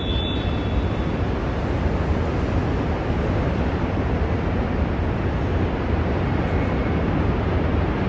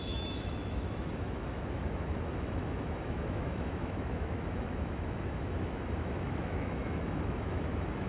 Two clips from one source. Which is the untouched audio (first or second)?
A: first